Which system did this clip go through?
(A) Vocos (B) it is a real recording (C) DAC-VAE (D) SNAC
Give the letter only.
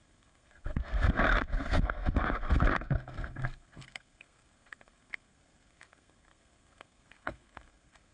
D